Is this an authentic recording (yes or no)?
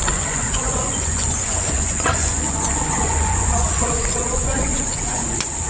no